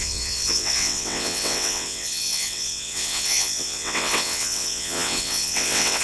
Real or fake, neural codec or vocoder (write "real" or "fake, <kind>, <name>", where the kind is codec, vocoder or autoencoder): fake, vocoder, WaveNeXt